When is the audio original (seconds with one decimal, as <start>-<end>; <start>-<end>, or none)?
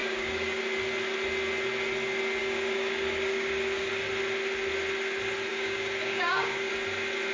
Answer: 0.6-2.4; 3.9-5.5; 6.7-7.3